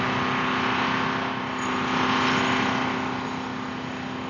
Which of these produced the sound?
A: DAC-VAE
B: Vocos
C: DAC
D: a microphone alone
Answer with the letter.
D